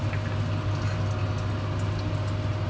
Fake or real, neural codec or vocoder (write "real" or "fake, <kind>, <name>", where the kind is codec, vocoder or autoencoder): real